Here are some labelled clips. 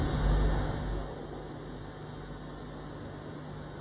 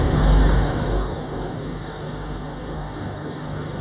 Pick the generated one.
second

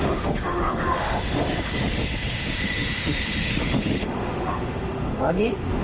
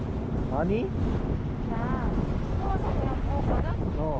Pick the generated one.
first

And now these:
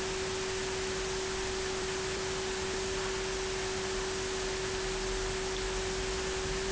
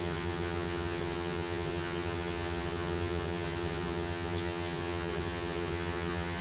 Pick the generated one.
second